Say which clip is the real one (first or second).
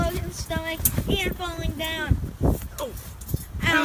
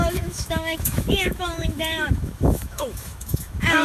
first